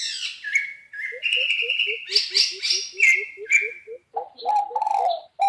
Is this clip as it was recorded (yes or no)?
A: yes